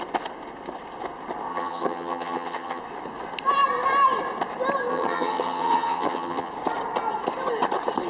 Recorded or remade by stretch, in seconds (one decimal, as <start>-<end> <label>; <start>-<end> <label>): 0.0-1.5 recorded; 1.5-2.8 remade; 2.8-4.9 recorded; 4.9-6.5 remade; 6.5-8.1 recorded